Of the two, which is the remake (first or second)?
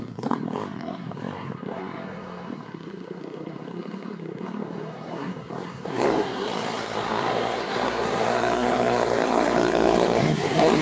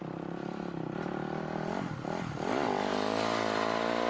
first